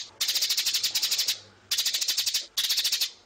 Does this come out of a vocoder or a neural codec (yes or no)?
no